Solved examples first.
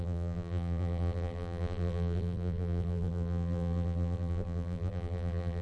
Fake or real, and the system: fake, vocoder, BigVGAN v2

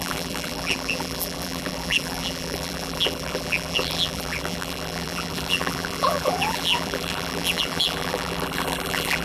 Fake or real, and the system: fake, vocoder, BigVGAN v2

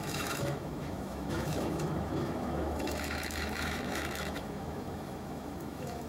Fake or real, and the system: fake, autoencoder, DAC-VAE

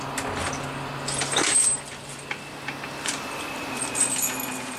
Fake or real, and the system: real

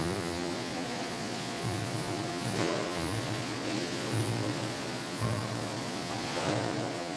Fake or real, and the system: fake, vocoder, Vocos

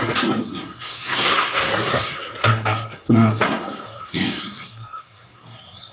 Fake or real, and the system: fake, codec, SNAC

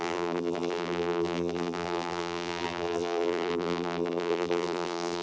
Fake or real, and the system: fake, vocoder, BigVGAN v2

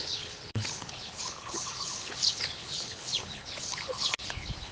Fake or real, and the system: fake, codec, HILCodec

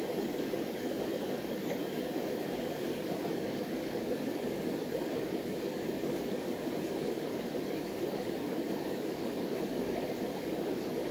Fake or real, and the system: fake, codec, DAC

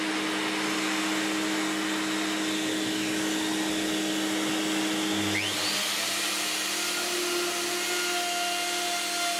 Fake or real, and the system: real